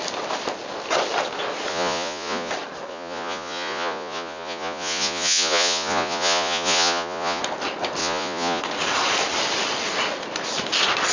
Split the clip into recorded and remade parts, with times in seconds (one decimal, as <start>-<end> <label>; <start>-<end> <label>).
0.0-1.7 recorded; 1.7-2.5 remade; 2.5-2.9 recorded; 2.9-7.4 remade; 7.4-8.0 recorded; 8.0-8.6 remade; 8.6-11.1 recorded